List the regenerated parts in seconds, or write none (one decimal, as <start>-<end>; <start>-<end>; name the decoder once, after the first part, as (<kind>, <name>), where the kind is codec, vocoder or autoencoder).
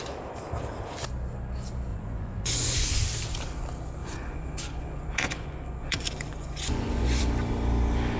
1.9-2.9 (vocoder, Vocos); 4.0-7.2